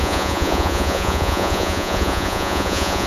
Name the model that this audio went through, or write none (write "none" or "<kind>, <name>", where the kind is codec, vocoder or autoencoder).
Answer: vocoder, Vocos